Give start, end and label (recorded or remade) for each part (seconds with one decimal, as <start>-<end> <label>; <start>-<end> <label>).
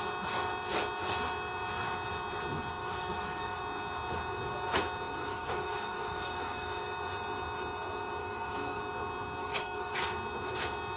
0.0-2.8 recorded; 2.8-3.6 remade; 3.6-5.3 recorded; 5.3-6.8 remade; 6.8-8.2 recorded; 8.2-8.8 remade; 8.8-9.4 recorded; 9.4-10.0 remade; 10.0-11.0 recorded